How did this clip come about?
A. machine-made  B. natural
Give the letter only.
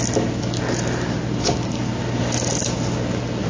B